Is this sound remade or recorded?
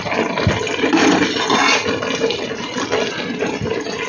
recorded